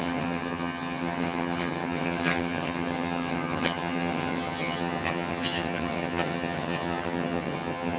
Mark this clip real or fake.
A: fake